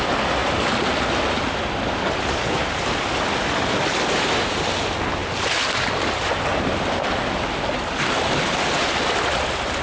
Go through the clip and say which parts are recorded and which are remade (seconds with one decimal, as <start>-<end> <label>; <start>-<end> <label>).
0.0-9.8 recorded